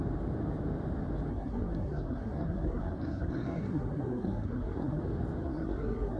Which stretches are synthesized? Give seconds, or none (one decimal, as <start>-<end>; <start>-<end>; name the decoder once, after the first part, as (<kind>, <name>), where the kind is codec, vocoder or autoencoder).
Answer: 1.3-5.0 (codec, SNAC); 5.4-6.2